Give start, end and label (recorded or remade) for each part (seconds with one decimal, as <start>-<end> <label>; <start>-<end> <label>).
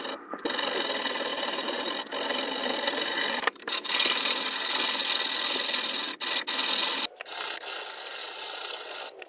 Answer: 0.0-1.3 recorded; 1.3-1.9 remade; 1.9-2.6 recorded; 2.6-4.6 remade; 4.6-8.2 recorded; 8.2-8.7 remade; 8.7-9.3 recorded